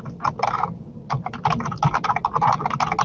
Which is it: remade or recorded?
recorded